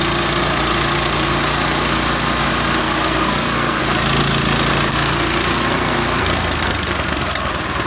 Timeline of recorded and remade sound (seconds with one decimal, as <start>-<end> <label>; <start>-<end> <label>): 0.0-2.8 recorded; 2.8-3.8 remade; 3.8-4.9 recorded; 4.9-7.5 remade; 7.5-7.9 recorded